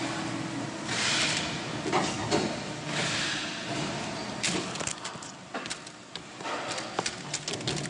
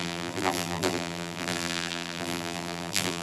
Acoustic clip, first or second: first